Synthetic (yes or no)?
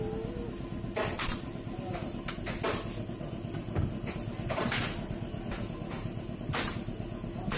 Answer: no